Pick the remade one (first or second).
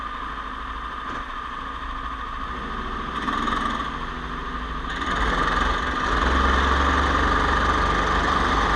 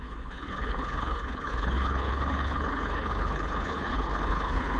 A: second